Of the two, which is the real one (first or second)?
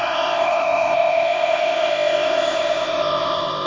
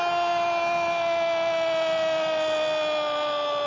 second